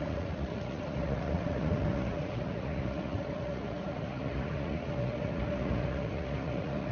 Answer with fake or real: fake